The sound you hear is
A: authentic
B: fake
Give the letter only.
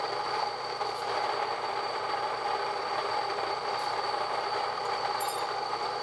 B